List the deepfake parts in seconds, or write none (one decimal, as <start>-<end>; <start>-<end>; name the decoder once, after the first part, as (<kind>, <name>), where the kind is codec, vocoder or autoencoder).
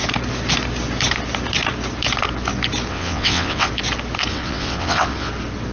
2.9-3.7 (vocoder, WaveNeXt); 4.3-5.3